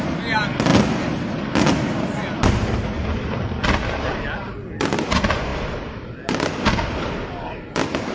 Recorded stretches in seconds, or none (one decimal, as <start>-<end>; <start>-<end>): 0.0-8.1